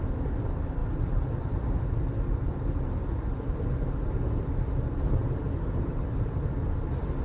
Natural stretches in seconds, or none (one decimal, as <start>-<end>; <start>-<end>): 0.0-7.2